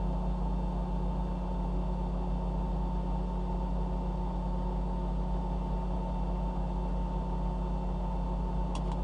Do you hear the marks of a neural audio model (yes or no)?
no